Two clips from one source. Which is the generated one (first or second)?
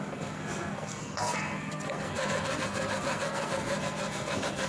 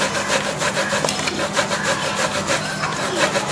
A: first